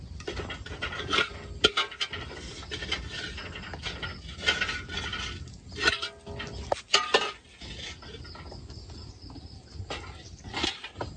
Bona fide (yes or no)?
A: yes